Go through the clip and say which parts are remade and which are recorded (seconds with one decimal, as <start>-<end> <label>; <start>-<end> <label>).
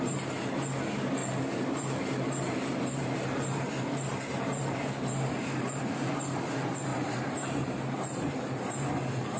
0.0-1.2 recorded; 1.2-5.8 remade; 5.8-6.9 recorded; 6.9-9.4 remade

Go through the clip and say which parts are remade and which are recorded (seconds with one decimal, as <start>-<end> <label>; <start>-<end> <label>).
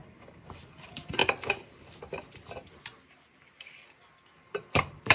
0.0-1.2 remade; 1.2-4.3 recorded; 4.3-5.1 remade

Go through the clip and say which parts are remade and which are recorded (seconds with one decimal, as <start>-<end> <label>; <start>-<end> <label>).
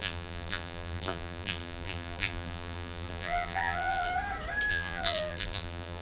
0.0-4.1 remade; 4.1-4.7 recorded; 4.7-6.0 remade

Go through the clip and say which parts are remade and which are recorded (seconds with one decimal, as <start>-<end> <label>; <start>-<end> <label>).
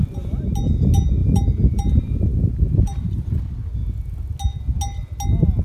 0.0-1.2 recorded; 1.2-3.4 remade; 3.4-5.6 recorded